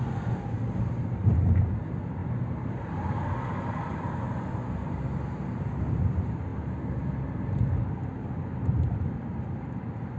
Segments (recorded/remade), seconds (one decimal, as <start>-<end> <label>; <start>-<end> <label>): 0.0-10.2 recorded